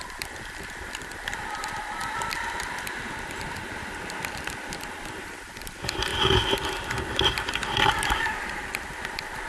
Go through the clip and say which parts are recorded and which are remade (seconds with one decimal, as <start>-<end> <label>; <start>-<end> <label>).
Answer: 0.0-2.0 remade; 2.0-5.2 recorded; 5.2-6.1 remade; 6.1-6.7 recorded; 6.7-9.5 remade